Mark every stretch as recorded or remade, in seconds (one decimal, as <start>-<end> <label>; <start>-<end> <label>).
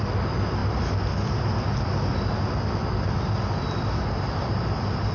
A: 0.0-5.1 recorded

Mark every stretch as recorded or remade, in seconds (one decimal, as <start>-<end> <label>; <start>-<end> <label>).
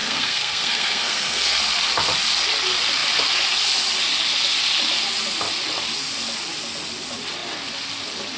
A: 0.0-1.6 remade; 1.6-8.4 recorded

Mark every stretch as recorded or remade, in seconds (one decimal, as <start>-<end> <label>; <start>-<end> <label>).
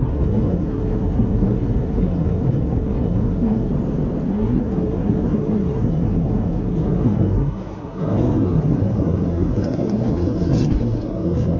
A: 0.0-3.7 remade; 3.7-4.3 recorded; 4.3-11.6 remade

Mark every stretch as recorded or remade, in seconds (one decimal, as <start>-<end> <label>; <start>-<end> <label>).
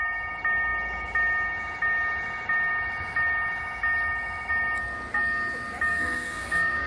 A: 0.0-5.9 recorded; 5.9-6.9 remade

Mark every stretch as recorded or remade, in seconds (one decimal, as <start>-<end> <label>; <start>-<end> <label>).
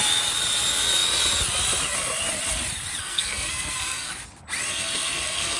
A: 0.0-3.0 recorded; 3.0-4.1 remade; 4.1-4.7 recorded; 4.7-5.6 remade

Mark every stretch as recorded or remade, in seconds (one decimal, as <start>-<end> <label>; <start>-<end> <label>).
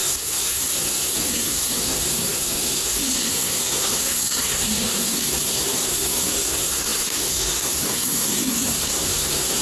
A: 0.0-9.6 remade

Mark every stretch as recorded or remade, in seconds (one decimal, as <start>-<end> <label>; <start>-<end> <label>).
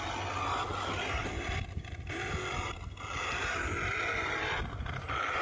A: 0.0-5.4 recorded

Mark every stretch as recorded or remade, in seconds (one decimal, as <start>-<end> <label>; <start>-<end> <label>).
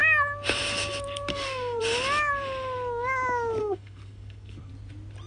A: 0.0-1.3 recorded; 1.3-1.8 remade; 1.8-3.6 recorded; 3.6-4.7 remade; 4.7-5.3 recorded